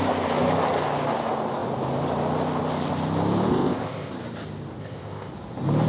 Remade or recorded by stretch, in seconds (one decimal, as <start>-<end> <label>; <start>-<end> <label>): 0.0-3.5 recorded; 3.5-4.1 remade; 4.1-4.8 recorded; 4.8-5.3 remade; 5.3-5.9 recorded